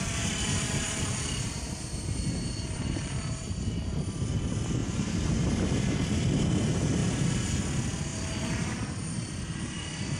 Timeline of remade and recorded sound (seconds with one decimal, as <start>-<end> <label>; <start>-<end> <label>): 0.0-1.1 recorded; 1.1-4.0 remade; 4.0-4.8 recorded; 4.8-5.5 remade; 5.5-7.0 recorded; 7.0-7.6 remade; 7.6-8.1 recorded; 8.1-10.2 remade